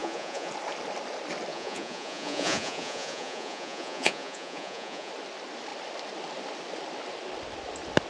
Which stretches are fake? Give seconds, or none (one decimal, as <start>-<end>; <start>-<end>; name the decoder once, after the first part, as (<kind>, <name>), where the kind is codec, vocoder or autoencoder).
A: 0.0-0.5 (vocoder, Vocos); 1.5-5.1